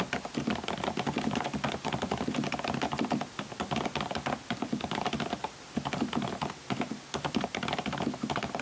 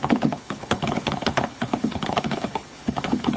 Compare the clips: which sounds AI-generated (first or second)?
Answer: second